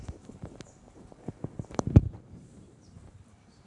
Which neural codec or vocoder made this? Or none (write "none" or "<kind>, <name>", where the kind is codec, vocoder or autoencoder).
vocoder, BigVGAN v2